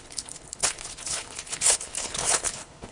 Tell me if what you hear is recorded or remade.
remade